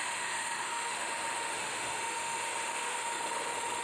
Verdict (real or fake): fake